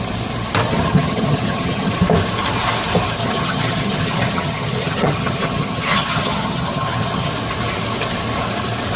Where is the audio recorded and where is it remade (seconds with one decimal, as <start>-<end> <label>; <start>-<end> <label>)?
0.0-0.7 recorded; 0.7-1.9 remade; 1.9-3.2 recorded; 3.2-7.3 remade; 7.3-9.0 recorded